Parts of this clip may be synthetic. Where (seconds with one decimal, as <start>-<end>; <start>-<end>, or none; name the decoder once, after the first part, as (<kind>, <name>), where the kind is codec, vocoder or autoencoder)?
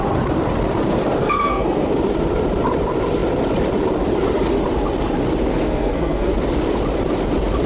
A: 1.2-1.9 (codec, SNAC); 5.5-6.3